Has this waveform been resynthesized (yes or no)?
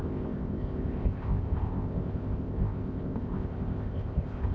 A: yes